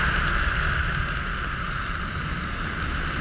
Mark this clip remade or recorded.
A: recorded